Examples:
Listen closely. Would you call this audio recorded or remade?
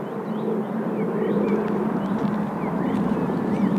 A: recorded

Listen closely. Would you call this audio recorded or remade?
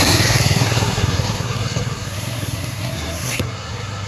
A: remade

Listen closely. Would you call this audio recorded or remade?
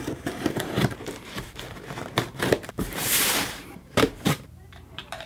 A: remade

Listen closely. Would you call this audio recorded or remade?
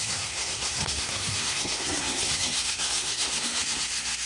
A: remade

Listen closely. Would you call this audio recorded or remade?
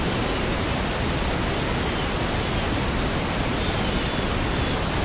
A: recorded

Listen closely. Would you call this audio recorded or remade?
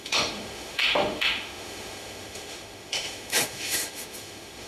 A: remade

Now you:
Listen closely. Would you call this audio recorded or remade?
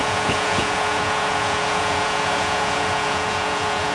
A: remade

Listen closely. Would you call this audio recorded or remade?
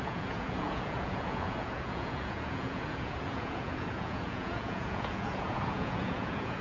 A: remade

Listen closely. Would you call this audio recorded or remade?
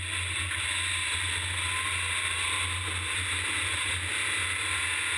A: recorded